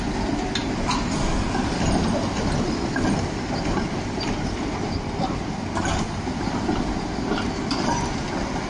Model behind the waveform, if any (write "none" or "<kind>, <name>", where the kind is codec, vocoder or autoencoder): none